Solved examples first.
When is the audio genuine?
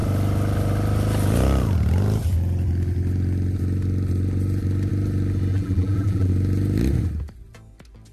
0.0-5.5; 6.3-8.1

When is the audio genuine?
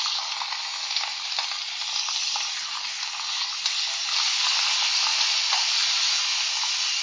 0.0-7.0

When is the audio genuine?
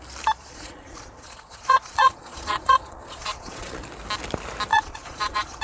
0.0-0.4; 3.8-4.7